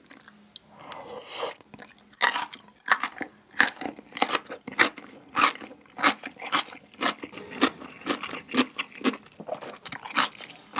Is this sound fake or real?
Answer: real